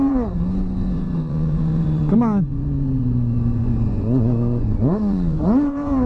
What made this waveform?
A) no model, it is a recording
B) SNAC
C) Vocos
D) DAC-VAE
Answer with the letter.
C